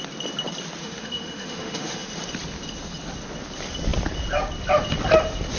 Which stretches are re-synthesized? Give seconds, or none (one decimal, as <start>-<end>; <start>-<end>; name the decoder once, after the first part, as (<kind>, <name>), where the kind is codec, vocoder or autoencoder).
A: 0.8-2.1 (autoencoder, DAC-VAE)